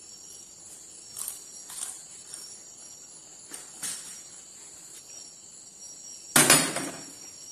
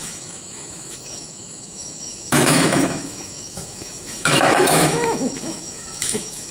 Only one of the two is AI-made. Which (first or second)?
second